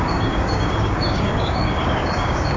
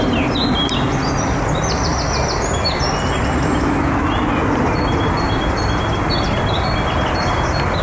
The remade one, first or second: first